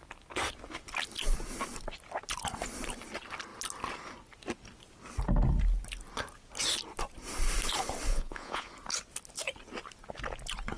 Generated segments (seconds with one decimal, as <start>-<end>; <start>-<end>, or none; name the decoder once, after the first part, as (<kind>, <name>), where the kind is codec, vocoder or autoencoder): 8.1-8.7 (vocoder, Vocos)